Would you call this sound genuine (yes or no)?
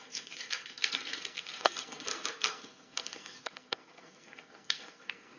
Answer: no